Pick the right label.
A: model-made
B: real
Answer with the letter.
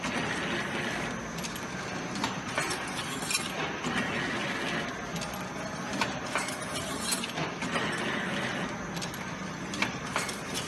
B